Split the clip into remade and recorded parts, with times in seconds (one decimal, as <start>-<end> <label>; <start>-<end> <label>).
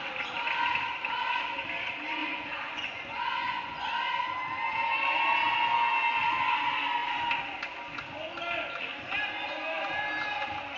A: 0.0-2.2 recorded; 2.2-3.9 remade; 3.9-10.8 recorded